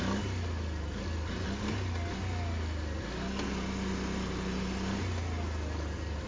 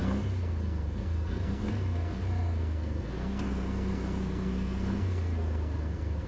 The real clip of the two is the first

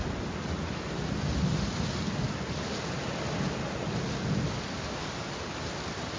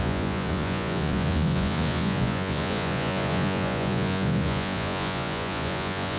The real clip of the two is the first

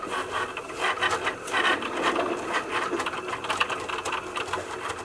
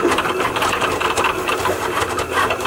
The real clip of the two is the first